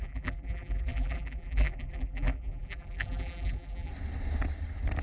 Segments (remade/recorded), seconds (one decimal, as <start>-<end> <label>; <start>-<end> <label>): 0.0-3.9 remade; 3.9-5.0 recorded